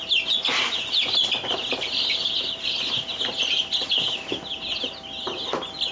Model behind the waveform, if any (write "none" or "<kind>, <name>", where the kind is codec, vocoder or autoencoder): none